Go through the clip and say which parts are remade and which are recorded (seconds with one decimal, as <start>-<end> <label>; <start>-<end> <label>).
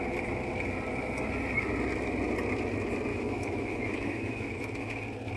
0.0-3.1 recorded; 3.1-5.0 remade; 5.0-5.4 recorded